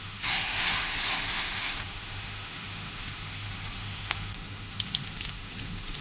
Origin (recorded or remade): remade